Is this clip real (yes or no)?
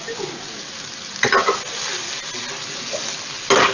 yes